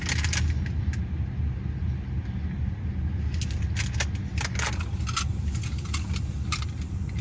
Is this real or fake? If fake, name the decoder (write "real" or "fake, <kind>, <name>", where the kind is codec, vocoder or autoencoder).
real